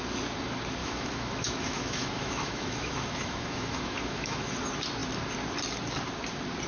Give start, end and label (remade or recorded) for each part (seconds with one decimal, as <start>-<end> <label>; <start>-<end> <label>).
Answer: 0.0-0.8 recorded; 0.8-4.5 remade; 4.5-6.7 recorded

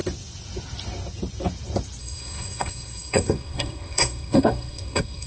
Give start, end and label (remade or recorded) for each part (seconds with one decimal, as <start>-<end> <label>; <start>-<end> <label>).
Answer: 0.0-2.0 recorded; 2.0-5.3 remade

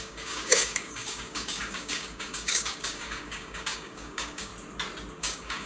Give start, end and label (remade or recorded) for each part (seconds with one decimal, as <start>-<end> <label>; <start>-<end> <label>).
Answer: 0.0-4.5 remade; 4.5-5.2 recorded; 5.2-5.7 remade

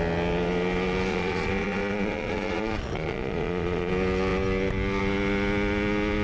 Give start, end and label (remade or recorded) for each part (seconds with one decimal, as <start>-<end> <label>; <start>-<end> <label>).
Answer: 0.0-1.1 recorded; 1.1-3.9 remade; 3.9-6.2 recorded

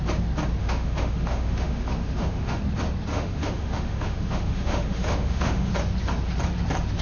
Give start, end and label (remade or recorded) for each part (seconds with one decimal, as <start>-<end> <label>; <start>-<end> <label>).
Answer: 0.0-0.6 recorded; 0.6-2.6 remade; 2.6-3.1 recorded; 3.1-5.7 remade; 5.7-7.0 recorded

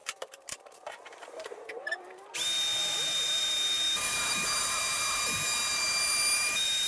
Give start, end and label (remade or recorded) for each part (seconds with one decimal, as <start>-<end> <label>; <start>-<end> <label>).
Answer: 0.0-2.4 remade; 2.4-2.8 recorded; 2.8-6.9 remade

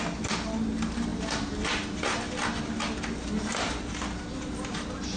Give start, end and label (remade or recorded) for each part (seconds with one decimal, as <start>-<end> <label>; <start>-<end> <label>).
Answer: 0.0-5.2 recorded